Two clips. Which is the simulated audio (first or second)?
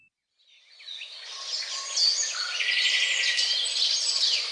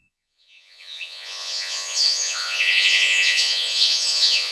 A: second